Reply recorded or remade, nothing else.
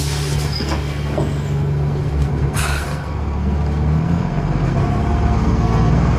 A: remade